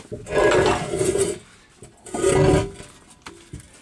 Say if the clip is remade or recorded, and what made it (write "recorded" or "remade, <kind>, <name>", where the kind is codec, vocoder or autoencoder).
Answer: recorded